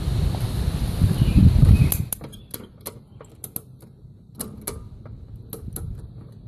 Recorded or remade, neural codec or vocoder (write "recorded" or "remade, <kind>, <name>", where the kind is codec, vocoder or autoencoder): recorded